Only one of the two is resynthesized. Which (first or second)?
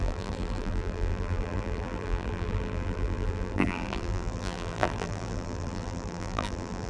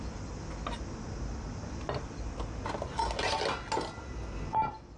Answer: first